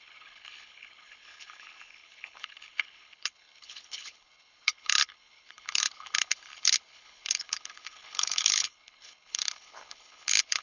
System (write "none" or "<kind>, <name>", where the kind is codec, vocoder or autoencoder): codec, HILCodec